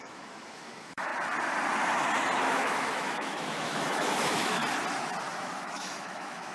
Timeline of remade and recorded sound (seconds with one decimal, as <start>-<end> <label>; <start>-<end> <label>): 0.0-1.1 remade; 1.1-2.4 recorded; 2.4-4.6 remade; 4.6-5.4 recorded; 5.4-6.5 remade